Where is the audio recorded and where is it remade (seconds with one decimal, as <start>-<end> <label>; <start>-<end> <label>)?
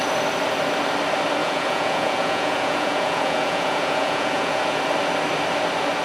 0.0-1.4 recorded; 1.4-4.8 remade; 4.8-6.0 recorded